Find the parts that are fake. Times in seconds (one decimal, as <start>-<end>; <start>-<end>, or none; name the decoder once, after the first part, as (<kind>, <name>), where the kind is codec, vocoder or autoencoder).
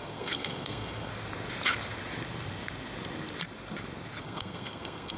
0.0-1.1 (codec, SNAC); 4.2-5.2